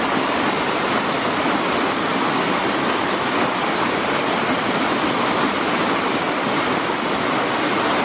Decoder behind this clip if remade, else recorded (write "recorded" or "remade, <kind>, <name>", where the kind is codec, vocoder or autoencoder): recorded